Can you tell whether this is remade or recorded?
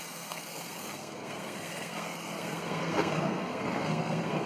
remade